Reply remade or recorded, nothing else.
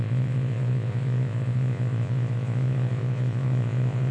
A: remade